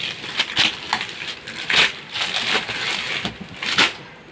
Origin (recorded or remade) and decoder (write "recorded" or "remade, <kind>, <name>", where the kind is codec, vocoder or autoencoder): recorded